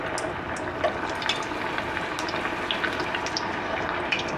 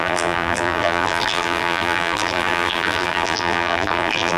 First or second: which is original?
first